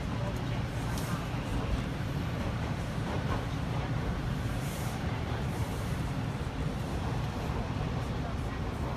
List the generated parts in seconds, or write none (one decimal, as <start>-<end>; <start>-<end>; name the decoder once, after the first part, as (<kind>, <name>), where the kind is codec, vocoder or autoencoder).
1.5-6.5 (vocoder, BigVGAN v2)